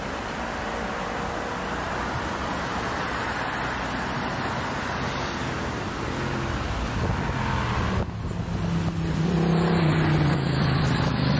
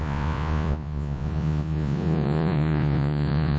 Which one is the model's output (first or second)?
second